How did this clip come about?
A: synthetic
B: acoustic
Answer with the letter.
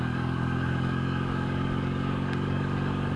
A